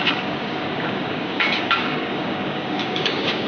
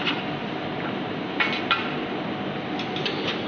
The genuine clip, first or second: second